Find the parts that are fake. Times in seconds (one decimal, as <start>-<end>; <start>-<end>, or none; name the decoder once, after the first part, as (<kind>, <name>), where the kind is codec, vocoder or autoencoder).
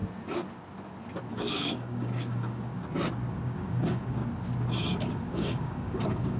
1.3-2.7 (codec, DAC); 3.4-4.2; 5.1-6.4